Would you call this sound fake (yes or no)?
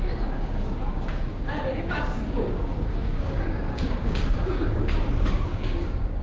yes